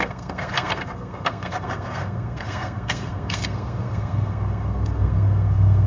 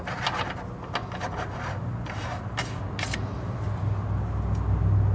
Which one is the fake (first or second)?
first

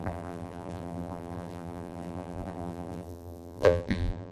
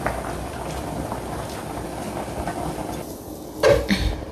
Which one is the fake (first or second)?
first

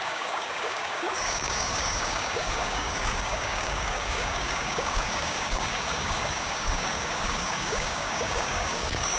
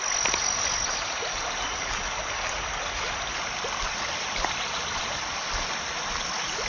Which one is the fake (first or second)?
first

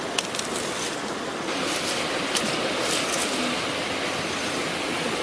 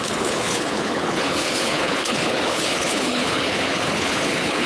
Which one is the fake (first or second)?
second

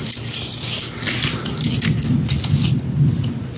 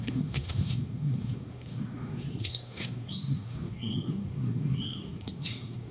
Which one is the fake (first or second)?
second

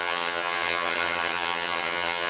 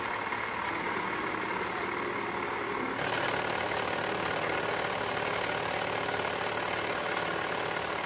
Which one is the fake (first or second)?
first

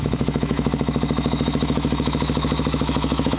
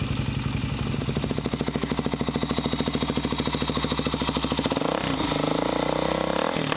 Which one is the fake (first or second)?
first